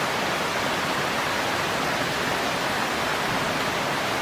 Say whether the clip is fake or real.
real